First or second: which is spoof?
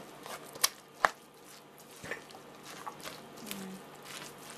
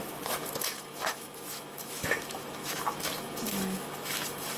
second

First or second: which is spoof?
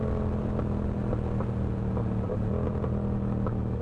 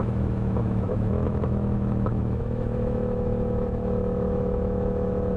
second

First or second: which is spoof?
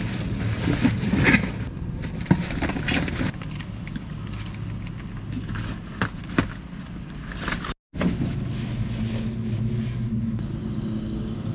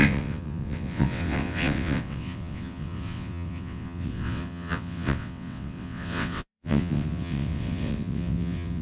second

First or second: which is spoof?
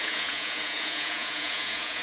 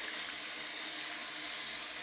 first